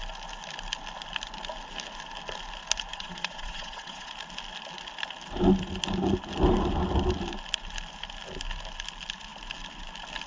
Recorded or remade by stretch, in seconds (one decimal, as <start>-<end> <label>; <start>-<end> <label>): 0.0-2.9 recorded; 2.9-4.1 remade; 4.1-10.3 recorded